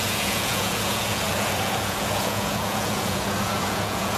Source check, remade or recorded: remade